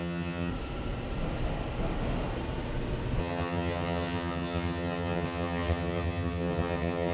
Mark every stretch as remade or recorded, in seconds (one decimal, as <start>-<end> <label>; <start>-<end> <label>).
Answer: 0.0-0.5 remade; 0.5-3.2 recorded; 3.2-7.1 remade